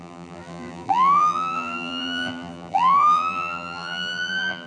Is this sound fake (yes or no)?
yes